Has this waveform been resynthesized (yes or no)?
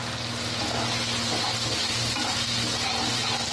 no